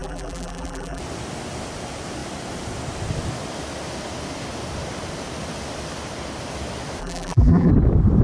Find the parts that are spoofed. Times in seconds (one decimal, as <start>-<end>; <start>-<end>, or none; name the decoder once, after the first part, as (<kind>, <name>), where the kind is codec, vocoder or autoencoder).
0.0-1.0 (vocoder, BigVGAN v2); 7.0-7.7